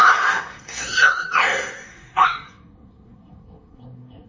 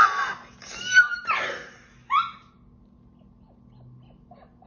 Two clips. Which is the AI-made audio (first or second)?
first